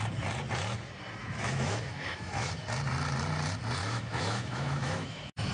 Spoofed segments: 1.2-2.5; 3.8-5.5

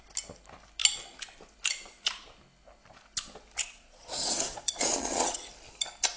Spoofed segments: 3.6-5.5